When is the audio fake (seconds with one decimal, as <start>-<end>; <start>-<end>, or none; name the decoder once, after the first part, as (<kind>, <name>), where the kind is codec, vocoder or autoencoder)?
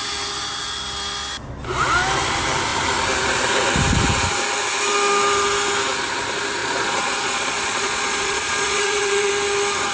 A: 6.6-9.3 (vocoder, Vocos)